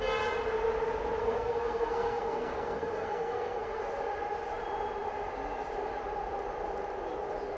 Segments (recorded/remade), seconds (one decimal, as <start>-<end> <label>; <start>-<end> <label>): 0.0-1.2 recorded; 1.2-3.8 remade; 3.8-7.6 recorded

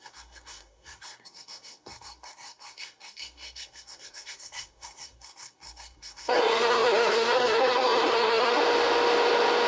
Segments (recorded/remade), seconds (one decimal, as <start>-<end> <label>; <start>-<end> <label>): 0.0-8.6 remade; 8.6-9.7 recorded

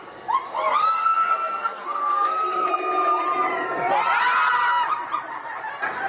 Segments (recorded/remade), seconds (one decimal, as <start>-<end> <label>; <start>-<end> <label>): 0.0-0.8 recorded; 0.8-2.7 remade; 2.7-6.1 recorded

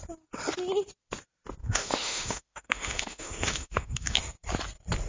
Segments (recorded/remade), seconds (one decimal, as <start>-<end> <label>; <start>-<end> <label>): 0.0-1.6 recorded; 1.6-4.2 remade; 4.2-5.1 recorded

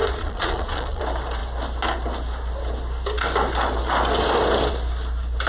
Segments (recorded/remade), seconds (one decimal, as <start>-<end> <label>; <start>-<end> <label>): 0.0-1.0 remade; 1.0-5.5 recorded

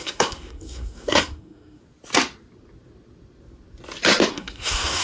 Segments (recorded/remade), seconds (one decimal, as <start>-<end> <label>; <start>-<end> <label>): 0.0-1.8 remade; 1.8-4.3 recorded; 4.3-5.0 remade